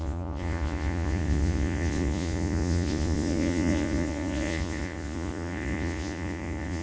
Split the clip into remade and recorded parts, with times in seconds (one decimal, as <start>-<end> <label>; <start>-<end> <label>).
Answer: 0.0-6.8 remade

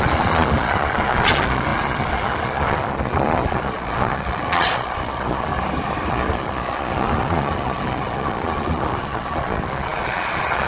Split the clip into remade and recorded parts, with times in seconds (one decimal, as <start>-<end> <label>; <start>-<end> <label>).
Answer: 0.0-5.5 remade; 5.5-6.1 recorded; 6.1-10.7 remade

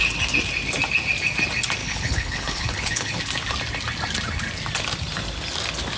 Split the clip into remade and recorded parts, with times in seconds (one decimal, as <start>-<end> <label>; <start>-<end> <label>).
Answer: 0.0-1.8 recorded; 1.8-3.2 remade; 3.2-6.0 recorded

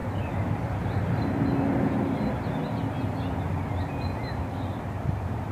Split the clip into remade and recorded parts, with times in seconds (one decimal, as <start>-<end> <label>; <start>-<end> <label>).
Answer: 0.0-5.5 recorded